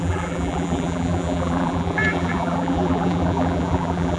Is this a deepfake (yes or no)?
yes